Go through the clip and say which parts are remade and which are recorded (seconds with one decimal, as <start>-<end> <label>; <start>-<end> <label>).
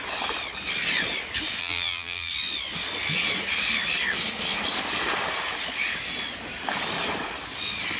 0.0-1.6 recorded; 1.6-2.3 remade; 2.3-8.0 recorded